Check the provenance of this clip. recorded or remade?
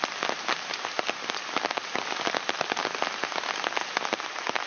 recorded